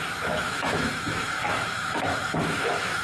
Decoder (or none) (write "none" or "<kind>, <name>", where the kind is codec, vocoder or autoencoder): autoencoder, DAC-VAE